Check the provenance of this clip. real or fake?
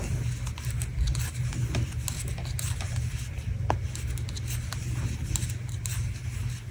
real